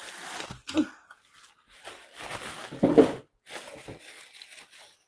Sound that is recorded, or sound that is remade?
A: recorded